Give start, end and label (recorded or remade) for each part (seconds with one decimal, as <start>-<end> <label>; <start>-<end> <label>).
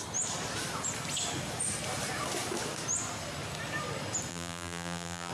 0.0-4.3 recorded; 4.3-5.3 remade